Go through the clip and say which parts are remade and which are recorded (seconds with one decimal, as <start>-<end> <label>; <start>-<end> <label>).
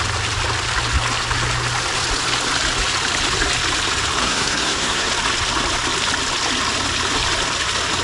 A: 0.0-4.2 recorded; 4.2-5.1 remade; 5.1-8.0 recorded